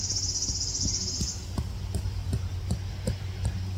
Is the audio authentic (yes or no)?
yes